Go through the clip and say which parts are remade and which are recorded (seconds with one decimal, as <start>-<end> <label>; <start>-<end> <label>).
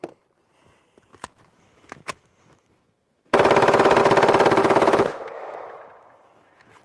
0.0-1.1 recorded; 1.1-4.0 remade; 4.0-4.6 recorded; 4.6-6.8 remade